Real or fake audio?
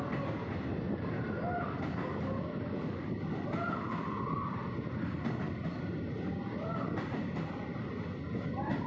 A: real